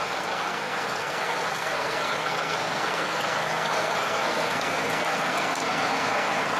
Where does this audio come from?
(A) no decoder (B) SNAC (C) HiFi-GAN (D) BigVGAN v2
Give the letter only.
B